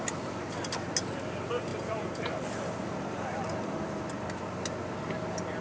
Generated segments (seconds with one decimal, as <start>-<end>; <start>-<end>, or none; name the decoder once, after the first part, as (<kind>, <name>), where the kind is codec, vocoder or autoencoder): none